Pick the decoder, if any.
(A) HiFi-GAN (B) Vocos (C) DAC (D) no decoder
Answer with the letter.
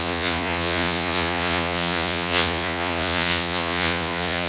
B